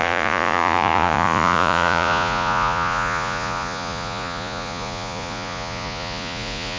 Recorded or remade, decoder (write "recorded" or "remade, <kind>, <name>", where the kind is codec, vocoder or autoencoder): remade, vocoder, Vocos